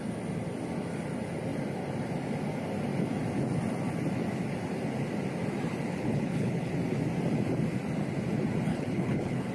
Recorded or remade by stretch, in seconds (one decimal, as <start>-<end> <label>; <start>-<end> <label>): 0.0-5.9 recorded; 5.9-6.7 remade; 6.7-8.7 recorded; 8.7-9.5 remade